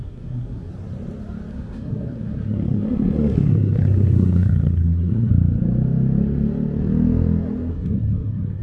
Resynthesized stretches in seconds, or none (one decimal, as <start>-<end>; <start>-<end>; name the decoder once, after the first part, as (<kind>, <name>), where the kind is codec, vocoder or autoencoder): 0.0-0.7 (codec, SNAC); 1.5-5.3; 7.7-8.6